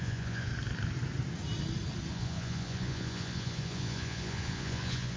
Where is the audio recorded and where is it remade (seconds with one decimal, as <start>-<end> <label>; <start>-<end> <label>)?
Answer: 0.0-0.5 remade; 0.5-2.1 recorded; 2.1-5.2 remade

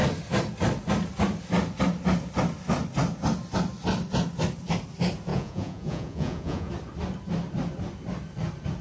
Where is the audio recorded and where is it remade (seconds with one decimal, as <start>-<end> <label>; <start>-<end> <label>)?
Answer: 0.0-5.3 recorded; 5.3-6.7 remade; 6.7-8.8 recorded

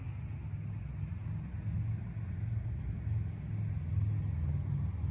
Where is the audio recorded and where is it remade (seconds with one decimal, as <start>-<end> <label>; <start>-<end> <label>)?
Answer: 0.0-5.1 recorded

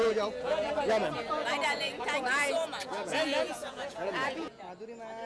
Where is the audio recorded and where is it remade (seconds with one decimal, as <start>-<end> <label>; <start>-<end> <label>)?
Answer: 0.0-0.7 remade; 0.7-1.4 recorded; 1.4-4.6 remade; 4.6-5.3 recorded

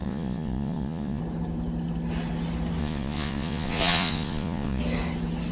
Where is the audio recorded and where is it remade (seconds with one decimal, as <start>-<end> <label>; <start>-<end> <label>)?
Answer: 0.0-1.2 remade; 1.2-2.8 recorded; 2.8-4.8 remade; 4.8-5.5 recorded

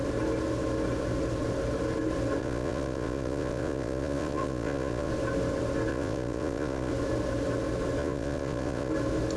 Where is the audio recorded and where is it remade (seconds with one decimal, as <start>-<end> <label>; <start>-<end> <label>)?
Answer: 0.0-2.4 recorded; 2.4-5.1 remade; 5.1-5.9 recorded; 5.9-6.9 remade; 6.9-8.0 recorded; 8.0-8.9 remade; 8.9-9.4 recorded